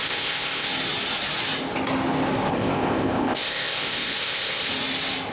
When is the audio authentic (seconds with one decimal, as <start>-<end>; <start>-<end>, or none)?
0.7-2.5; 4.7-5.3